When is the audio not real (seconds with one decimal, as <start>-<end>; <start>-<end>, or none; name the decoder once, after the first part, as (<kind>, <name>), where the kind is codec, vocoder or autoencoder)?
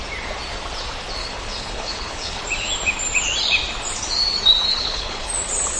1.2-2.4 (codec, HILCodec); 4.7-5.3